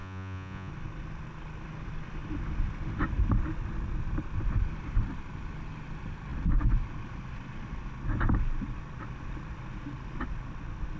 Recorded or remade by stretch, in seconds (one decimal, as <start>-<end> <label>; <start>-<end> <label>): 0.0-0.7 remade; 0.7-11.0 recorded